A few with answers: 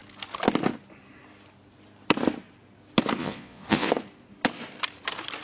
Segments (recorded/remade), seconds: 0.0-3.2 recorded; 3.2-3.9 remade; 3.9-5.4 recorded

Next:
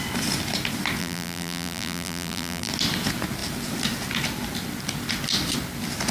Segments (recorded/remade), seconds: 0.0-1.0 recorded; 1.0-2.7 remade; 2.7-6.1 recorded

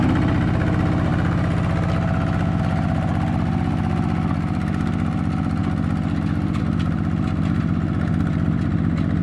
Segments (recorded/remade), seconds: 0.0-9.2 recorded